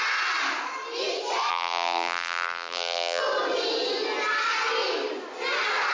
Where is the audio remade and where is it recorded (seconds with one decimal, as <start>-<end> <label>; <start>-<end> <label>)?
0.0-1.5 recorded; 1.5-3.2 remade; 3.2-5.9 recorded